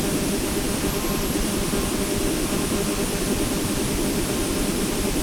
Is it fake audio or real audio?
real